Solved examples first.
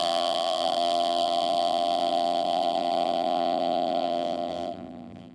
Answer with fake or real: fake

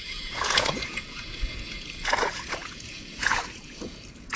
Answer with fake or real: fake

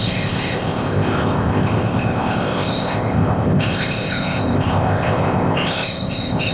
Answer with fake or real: fake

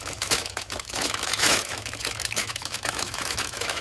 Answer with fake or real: fake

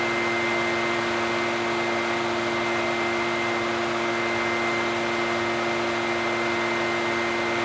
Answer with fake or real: real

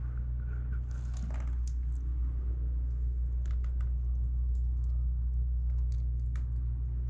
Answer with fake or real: real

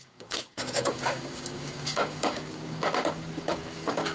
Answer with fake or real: fake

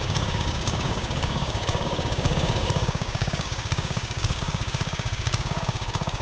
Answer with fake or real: fake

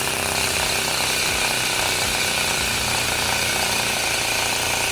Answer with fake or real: real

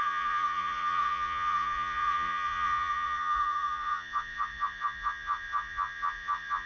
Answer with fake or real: fake